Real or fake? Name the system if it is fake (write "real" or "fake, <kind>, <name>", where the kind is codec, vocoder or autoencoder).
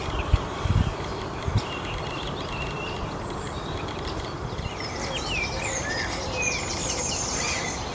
fake, vocoder, BigVGAN v2